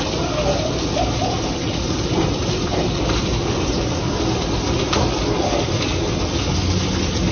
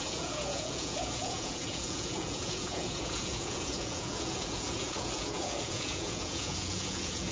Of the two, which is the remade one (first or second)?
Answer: second